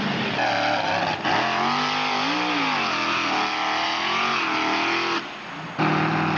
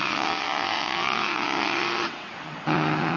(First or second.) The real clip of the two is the first